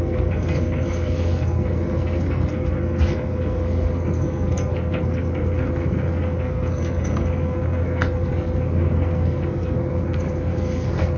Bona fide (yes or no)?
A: no